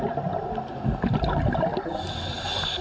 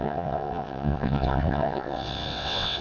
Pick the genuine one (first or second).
first